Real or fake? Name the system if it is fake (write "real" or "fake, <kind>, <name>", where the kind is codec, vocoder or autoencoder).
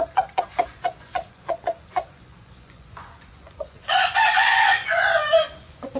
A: fake, vocoder, Vocos